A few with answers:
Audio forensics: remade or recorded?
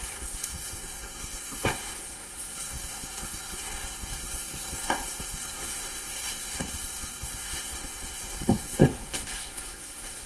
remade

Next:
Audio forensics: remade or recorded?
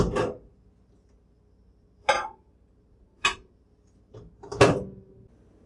recorded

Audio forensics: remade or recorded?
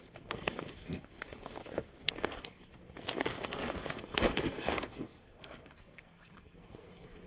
remade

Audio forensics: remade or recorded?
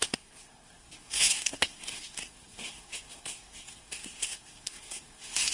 remade